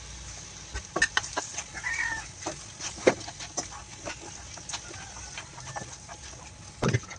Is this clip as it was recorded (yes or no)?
yes